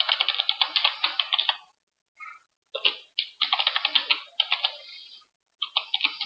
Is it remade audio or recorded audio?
recorded